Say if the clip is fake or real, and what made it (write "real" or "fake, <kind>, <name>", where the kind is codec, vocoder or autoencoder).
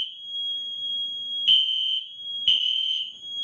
fake, vocoder, BigVGAN v2